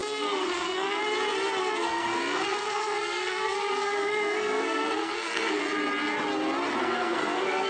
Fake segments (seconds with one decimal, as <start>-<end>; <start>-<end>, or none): 0.0-1.0; 1.6-5.6; 6.8-7.7